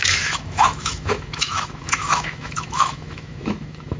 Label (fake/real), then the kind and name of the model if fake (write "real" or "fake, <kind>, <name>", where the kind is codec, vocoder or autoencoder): fake, autoencoder, DAC-VAE